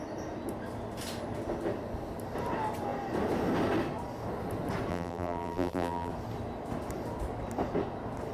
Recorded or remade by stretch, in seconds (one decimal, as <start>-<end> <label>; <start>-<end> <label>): 0.0-4.9 recorded; 4.9-6.1 remade; 6.1-8.3 recorded